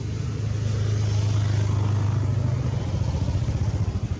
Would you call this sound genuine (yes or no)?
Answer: yes